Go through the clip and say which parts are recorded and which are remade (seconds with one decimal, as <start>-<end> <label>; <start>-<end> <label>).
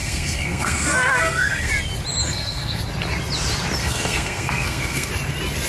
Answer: 0.0-1.7 remade; 1.7-2.2 recorded; 2.2-2.8 remade; 2.8-3.8 recorded; 3.8-5.1 remade; 5.1-5.7 recorded